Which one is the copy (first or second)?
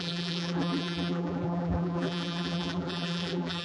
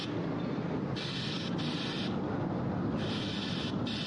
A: first